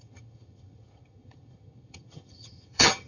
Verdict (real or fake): fake